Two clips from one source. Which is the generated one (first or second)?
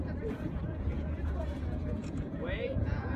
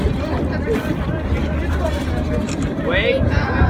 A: first